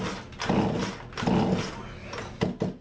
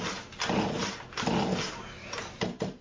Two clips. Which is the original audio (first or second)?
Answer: first